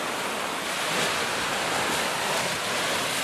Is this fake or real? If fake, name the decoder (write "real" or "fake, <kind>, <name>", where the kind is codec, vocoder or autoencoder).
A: real